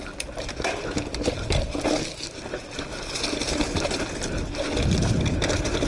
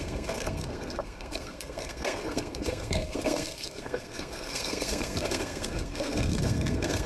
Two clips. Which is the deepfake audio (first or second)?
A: second